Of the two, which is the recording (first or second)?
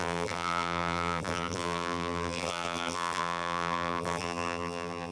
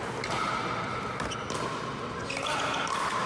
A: second